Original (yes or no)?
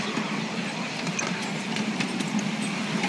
yes